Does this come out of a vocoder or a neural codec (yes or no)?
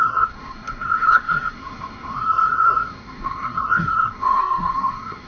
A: yes